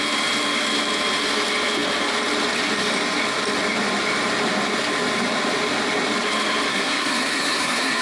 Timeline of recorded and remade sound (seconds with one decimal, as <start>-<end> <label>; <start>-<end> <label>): 0.0-6.7 recorded; 6.7-8.0 remade